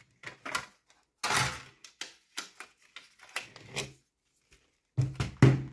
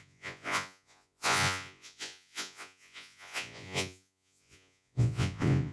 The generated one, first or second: second